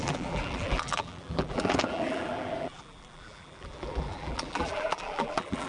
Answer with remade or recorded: remade